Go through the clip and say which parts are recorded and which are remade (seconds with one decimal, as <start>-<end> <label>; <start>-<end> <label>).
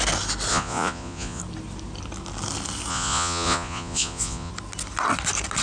0.0-0.5 recorded; 0.5-1.4 remade; 1.4-2.9 recorded; 2.9-4.5 remade; 4.5-5.6 recorded